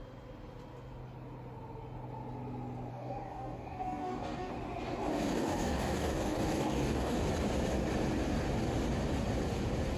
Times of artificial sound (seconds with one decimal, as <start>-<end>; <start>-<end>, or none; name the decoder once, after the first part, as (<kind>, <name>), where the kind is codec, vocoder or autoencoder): 2.9-4.5 (codec, DAC); 5.1-7.3